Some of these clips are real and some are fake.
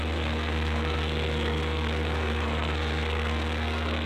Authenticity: fake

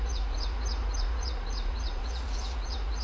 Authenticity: fake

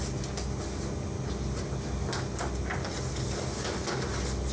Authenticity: real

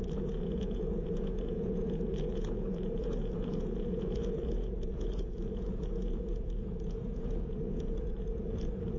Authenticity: fake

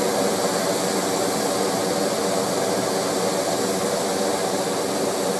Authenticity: real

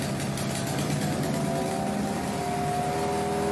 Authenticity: real